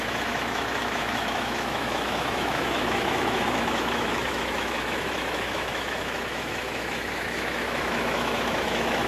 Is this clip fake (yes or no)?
yes